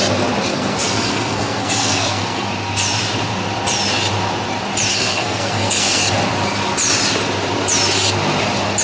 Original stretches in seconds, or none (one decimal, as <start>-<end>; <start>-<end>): 0.0-0.5; 2.5-4.9; 6.0-8.8